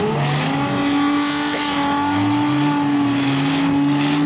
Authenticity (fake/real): real